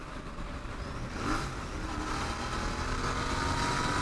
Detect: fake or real real